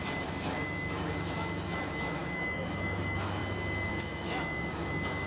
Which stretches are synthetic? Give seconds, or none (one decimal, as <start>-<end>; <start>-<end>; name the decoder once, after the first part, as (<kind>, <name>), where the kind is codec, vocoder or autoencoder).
0.0-3.4 (autoencoder, DAC-VAE); 3.9-5.3